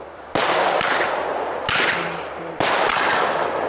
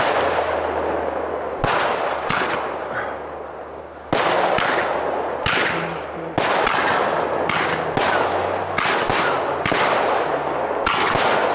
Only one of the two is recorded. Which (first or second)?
second